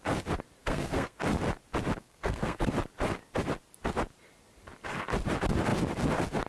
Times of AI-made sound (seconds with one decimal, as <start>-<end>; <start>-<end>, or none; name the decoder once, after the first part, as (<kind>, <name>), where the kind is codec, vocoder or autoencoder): 0.6-1.2 (codec, SNAC); 2.0-2.7